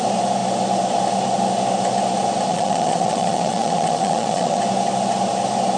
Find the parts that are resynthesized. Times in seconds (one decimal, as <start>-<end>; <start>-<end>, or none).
2.5-4.6